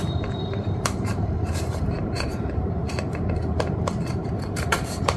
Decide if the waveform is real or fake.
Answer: fake